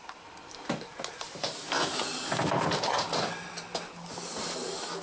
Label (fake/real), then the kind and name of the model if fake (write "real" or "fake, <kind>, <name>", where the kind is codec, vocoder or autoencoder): real